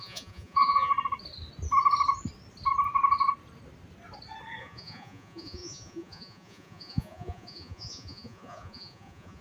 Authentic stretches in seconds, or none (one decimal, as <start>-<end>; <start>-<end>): 0.9-4.6